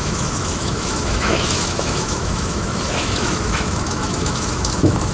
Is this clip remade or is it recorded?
remade